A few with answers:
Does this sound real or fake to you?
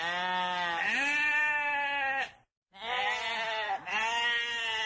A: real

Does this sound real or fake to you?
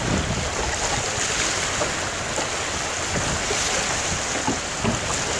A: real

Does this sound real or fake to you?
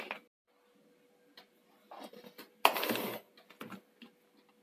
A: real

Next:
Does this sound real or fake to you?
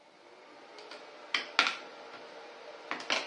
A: real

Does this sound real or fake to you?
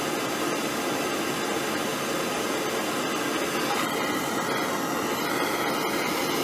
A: real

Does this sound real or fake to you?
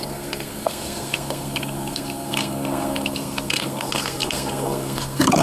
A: fake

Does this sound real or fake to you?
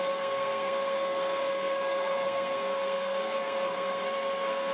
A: fake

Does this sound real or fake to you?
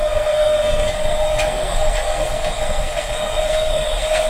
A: fake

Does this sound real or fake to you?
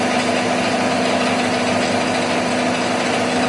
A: real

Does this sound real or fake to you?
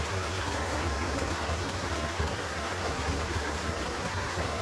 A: fake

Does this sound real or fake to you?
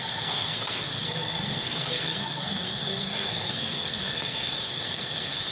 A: fake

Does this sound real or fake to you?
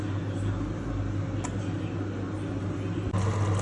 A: real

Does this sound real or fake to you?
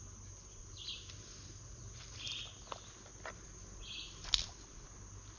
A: real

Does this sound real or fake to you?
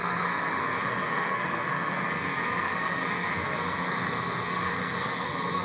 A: fake